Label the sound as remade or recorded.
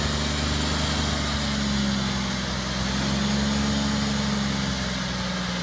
recorded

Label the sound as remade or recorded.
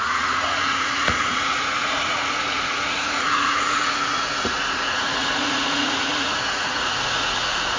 remade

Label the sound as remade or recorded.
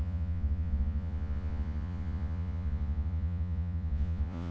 remade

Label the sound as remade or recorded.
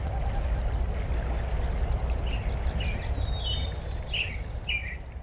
recorded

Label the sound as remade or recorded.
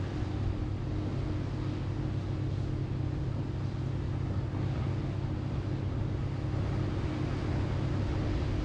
recorded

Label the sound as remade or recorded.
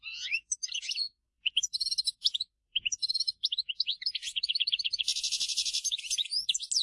remade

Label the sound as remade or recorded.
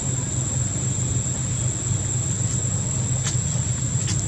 recorded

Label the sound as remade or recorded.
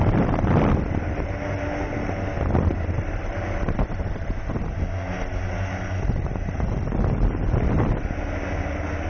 recorded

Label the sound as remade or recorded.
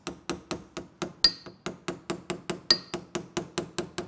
recorded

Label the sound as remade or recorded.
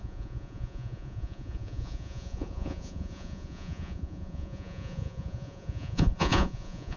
remade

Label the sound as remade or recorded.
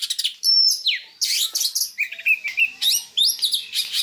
recorded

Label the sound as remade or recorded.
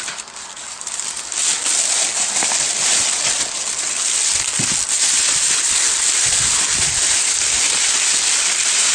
recorded